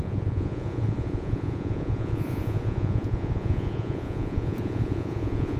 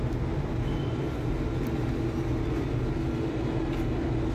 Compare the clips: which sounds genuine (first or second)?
second